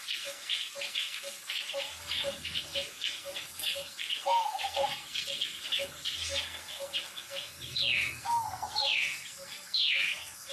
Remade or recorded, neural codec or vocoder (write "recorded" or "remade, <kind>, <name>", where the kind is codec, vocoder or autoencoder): remade, codec, SNAC